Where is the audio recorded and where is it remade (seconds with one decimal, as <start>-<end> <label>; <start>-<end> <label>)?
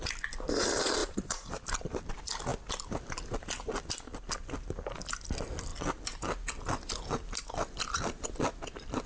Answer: 0.0-1.0 recorded; 1.0-2.1 remade; 2.1-9.1 recorded